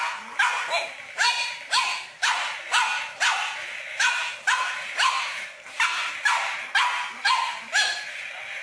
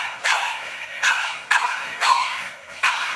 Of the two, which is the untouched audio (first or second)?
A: first